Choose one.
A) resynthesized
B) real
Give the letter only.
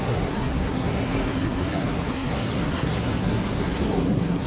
A